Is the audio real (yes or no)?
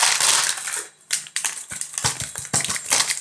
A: yes